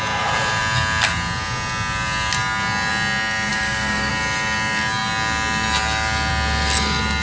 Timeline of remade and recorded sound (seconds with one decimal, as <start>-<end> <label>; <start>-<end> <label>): 0.0-3.5 recorded; 3.5-4.1 remade; 4.1-7.2 recorded